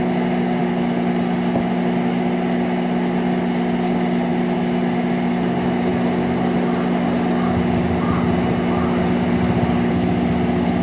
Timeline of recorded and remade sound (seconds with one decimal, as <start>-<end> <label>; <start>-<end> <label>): 0.0-10.8 recorded